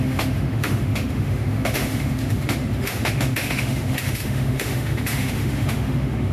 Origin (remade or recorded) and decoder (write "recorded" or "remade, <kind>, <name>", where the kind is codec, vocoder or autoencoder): remade, autoencoder, DAC-VAE